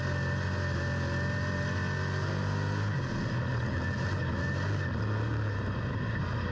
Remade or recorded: recorded